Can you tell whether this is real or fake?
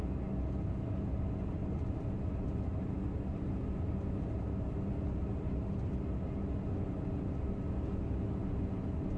real